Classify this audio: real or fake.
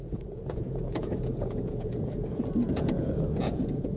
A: fake